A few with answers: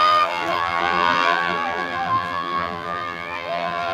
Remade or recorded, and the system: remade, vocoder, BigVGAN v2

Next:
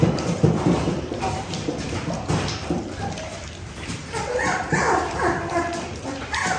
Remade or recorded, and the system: remade, vocoder, BigVGAN v2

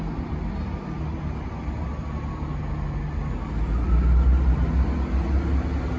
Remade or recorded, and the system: recorded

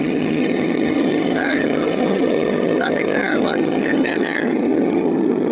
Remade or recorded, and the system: remade, vocoder, HiFi-GAN